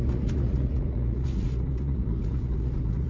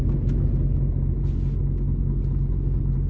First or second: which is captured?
second